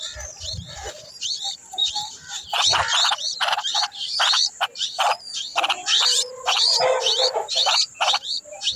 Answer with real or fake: fake